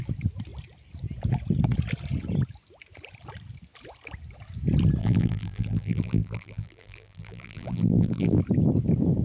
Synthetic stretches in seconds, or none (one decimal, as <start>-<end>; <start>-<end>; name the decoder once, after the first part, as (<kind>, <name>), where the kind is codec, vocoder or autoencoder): 5.0-8.4 (vocoder, BigVGAN v2)